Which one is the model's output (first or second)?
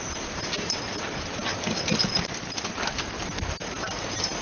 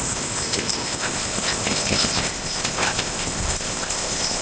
second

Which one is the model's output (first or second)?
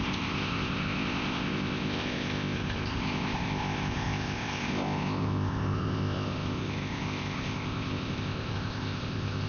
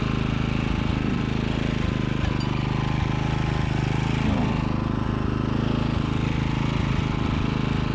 first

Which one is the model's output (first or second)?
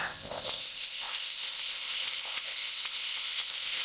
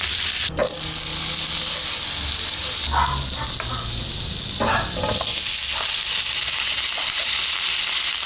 first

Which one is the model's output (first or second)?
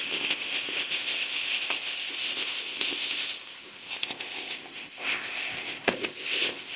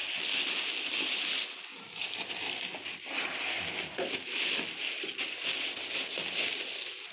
first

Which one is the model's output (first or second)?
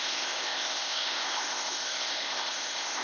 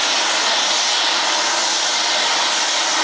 first